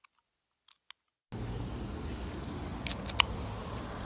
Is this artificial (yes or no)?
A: no